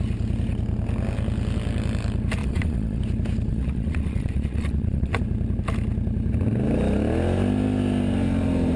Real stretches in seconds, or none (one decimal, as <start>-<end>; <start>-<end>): 0.0-2.4; 3.0-3.5; 5.2-8.8